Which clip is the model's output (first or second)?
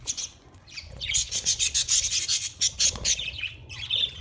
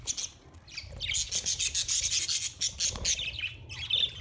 first